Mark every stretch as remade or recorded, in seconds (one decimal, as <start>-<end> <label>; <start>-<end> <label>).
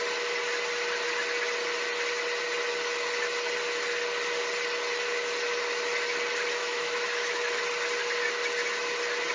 0.0-6.6 recorded; 6.6-7.6 remade; 7.6-9.3 recorded